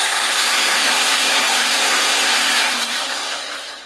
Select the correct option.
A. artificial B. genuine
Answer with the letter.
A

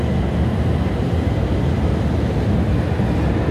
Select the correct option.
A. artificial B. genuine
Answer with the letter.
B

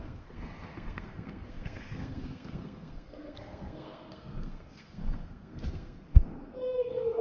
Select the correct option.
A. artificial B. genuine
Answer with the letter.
A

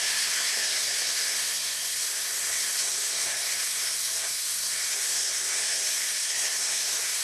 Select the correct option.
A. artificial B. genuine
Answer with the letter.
A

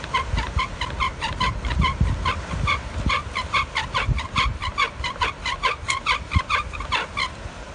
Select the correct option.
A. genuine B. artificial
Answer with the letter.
A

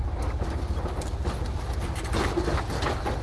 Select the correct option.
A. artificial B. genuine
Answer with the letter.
B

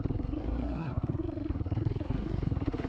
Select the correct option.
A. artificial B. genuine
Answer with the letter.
A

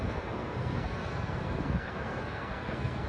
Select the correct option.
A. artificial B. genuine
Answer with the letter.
A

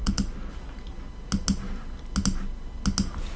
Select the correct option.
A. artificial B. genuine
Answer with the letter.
B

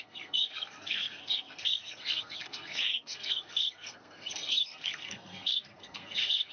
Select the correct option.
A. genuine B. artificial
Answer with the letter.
B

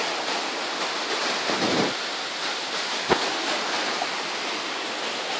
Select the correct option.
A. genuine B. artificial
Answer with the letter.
A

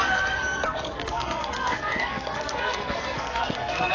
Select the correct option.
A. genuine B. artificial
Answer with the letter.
B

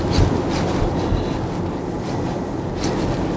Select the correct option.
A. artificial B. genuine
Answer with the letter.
B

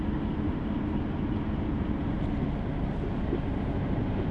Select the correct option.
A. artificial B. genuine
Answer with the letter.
B